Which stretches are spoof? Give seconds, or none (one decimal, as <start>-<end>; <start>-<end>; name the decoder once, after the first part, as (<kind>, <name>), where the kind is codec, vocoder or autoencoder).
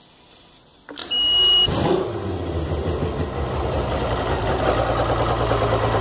none